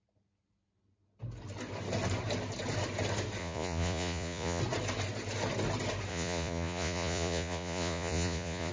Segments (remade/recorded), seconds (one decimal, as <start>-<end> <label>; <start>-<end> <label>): 0.0-3.4 recorded; 3.4-4.6 remade; 4.6-6.1 recorded; 6.1-8.7 remade